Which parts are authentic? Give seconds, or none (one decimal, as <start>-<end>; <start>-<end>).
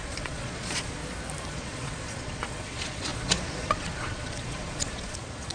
1.0-1.5